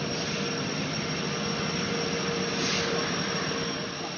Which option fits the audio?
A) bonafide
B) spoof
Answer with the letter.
A